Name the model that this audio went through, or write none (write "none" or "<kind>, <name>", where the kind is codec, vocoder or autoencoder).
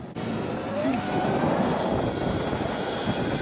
none